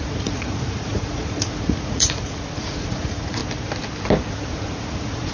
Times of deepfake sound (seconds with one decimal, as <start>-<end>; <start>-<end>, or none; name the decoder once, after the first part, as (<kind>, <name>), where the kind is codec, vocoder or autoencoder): 0.0-3.4 (vocoder, Vocos); 4.3-5.3